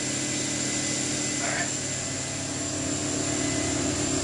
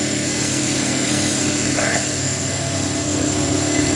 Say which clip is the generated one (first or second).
second